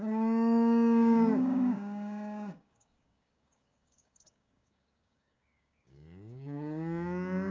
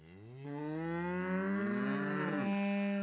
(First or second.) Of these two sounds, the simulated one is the first